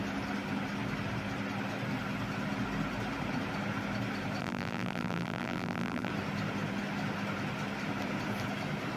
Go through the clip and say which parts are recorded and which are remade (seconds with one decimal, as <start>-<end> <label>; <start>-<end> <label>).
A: 0.0-4.4 recorded; 4.4-6.1 remade; 6.1-9.0 recorded